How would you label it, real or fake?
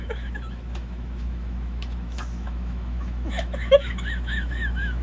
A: fake